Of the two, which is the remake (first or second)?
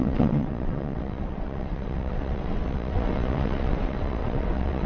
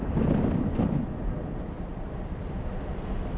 first